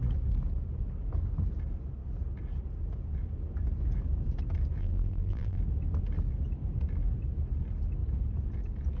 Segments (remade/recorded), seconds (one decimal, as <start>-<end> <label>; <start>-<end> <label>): 0.0-4.8 recorded; 4.8-5.6 remade; 5.6-9.0 recorded